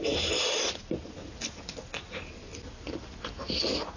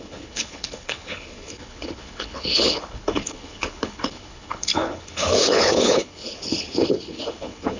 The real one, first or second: first